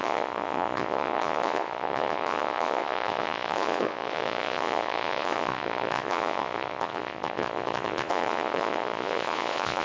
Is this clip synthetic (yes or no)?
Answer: yes